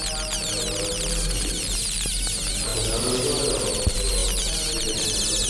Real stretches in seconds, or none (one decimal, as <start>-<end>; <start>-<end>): 0.0-5.5